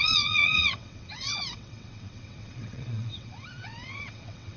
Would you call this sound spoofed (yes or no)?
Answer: yes